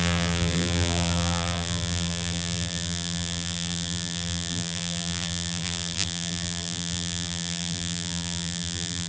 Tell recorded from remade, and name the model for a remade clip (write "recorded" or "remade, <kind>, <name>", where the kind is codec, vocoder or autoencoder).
remade, vocoder, BigVGAN v2